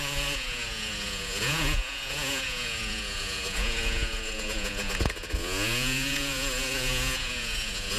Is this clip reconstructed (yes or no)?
yes